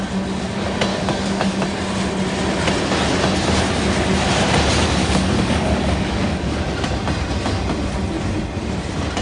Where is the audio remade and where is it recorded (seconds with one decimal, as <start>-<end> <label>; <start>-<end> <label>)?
0.0-0.9 recorded; 0.9-1.6 remade; 1.6-5.0 recorded; 5.0-6.6 remade; 6.6-9.2 recorded